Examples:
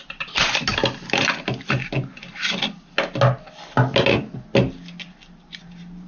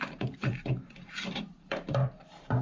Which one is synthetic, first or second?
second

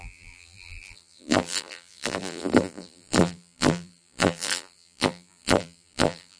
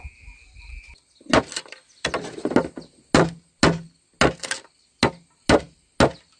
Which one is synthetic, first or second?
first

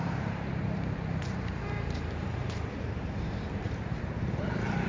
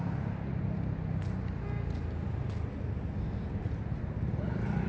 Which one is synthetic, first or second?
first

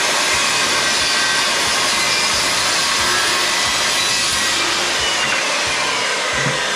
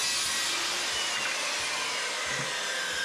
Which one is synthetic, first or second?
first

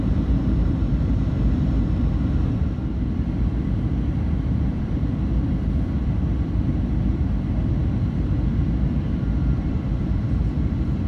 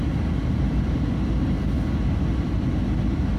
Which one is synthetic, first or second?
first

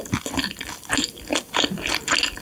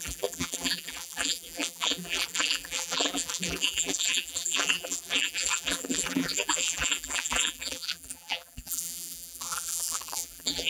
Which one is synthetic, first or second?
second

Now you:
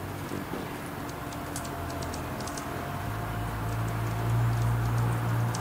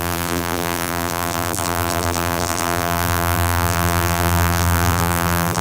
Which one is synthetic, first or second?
second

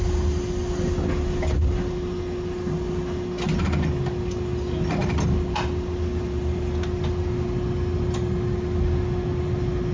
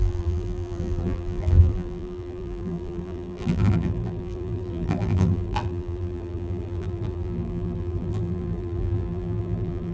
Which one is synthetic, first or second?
second